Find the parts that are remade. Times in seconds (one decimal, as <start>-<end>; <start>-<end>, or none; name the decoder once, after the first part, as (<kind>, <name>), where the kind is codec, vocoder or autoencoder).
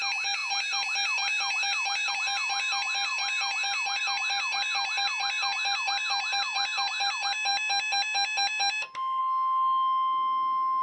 none